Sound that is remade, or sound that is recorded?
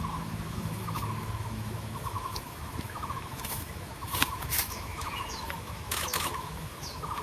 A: remade